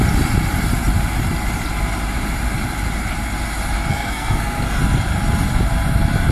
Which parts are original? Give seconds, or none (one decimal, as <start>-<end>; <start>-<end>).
0.0-3.9; 4.8-6.3